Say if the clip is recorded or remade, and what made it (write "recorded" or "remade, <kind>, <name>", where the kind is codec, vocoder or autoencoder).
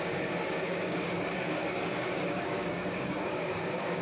remade, codec, DAC